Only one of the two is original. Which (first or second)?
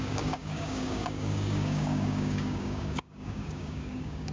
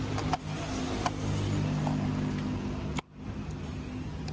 second